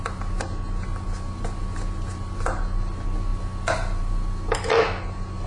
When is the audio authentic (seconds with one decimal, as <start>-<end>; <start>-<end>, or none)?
0.0-5.5